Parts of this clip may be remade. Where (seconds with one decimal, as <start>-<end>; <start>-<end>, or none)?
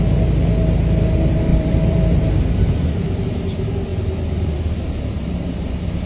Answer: 1.5-2.3; 3.9-4.6